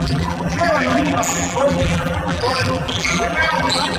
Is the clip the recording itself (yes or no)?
no